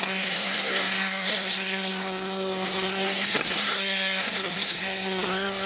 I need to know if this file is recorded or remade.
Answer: remade